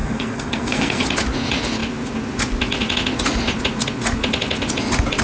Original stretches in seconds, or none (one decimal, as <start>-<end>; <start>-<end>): 1.1-5.2